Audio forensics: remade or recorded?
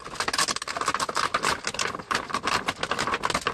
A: recorded